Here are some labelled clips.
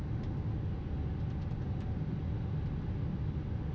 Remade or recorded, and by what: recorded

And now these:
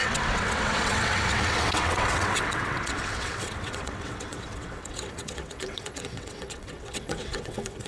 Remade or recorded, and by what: remade, vocoder, WaveNeXt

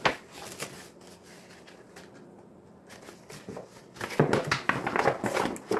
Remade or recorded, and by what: recorded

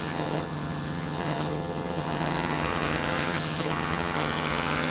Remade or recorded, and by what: remade, vocoder, HiFi-GAN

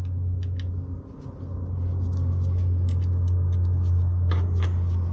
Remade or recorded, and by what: recorded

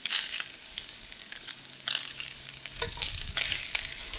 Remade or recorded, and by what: remade, codec, DAC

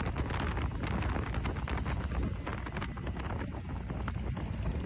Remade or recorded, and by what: recorded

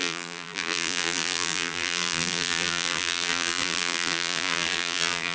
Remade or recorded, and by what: remade, vocoder, BigVGAN v2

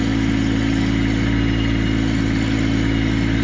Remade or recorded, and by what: recorded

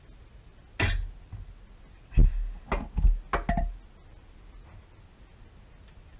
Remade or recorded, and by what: recorded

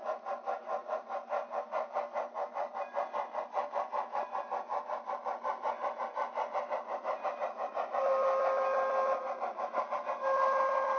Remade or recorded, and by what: recorded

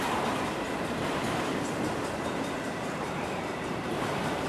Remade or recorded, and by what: remade, vocoder, BigVGAN v2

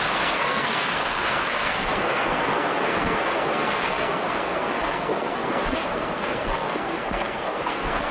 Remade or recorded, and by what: remade, codec, SNAC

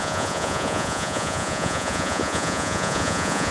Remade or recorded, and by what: remade, vocoder, Vocos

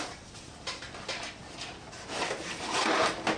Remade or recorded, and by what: recorded